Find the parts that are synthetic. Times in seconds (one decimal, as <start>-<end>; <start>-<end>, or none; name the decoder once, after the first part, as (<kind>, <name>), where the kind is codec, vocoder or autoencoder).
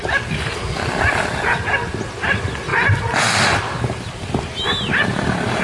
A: none